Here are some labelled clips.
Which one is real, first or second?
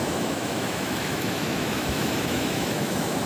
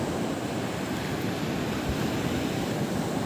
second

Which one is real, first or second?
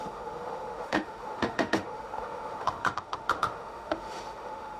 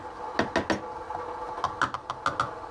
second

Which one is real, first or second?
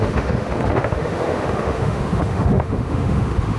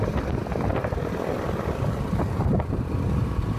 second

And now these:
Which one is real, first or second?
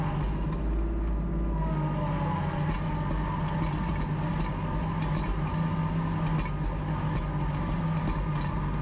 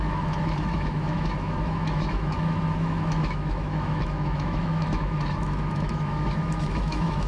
first